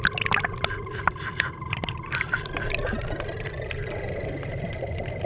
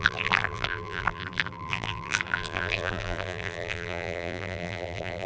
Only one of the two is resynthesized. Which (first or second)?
second